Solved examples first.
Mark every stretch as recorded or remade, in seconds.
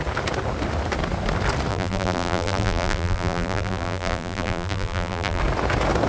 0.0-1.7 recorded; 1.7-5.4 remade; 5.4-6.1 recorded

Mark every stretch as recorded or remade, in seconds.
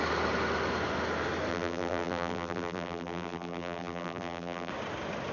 0.0-1.5 recorded; 1.5-4.7 remade; 4.7-5.3 recorded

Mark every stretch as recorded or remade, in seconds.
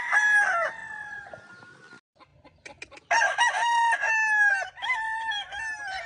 0.0-5.3 recorded; 5.3-6.1 remade